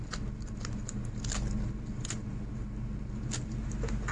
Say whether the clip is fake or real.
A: real